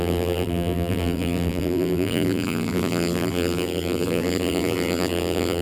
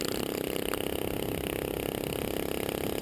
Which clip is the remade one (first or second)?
first